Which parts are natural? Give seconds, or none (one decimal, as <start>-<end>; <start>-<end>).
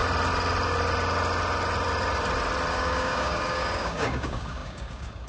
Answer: 0.0-2.7